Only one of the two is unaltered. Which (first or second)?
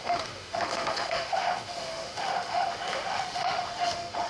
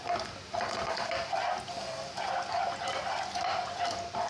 second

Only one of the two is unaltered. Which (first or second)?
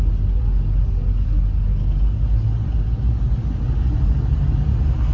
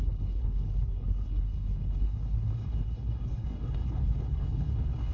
first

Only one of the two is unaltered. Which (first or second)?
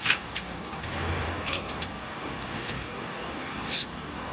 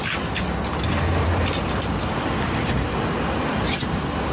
second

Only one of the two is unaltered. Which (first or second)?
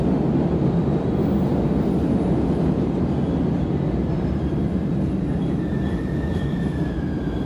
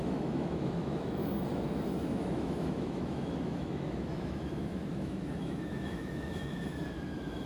first